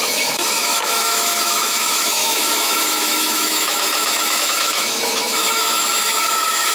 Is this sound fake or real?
fake